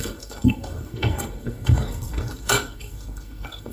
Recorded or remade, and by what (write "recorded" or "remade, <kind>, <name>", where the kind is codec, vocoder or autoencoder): remade, codec, SNAC